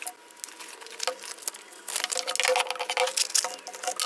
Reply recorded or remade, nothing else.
recorded